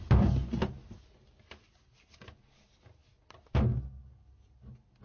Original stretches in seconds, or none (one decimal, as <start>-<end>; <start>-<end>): 0.0-5.0